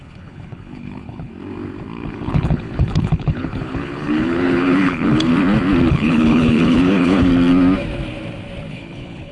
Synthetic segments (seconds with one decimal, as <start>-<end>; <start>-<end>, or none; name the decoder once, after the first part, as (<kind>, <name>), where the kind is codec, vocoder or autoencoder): 0.0-1.3 (codec, HILCodec); 2.1-5.3; 5.9-7.3; 8.7-9.3